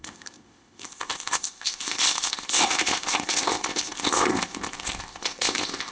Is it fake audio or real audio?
fake